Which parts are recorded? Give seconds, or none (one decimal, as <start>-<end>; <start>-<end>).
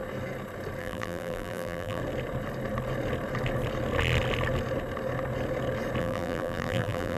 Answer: 0.0-0.8; 2.0-6.0